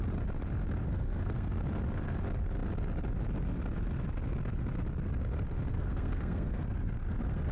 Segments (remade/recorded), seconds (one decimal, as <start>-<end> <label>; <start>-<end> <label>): 0.0-0.8 recorded; 0.8-1.6 remade; 1.6-5.7 recorded; 5.7-7.5 remade